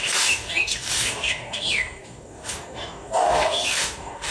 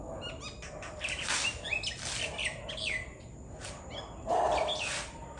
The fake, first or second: first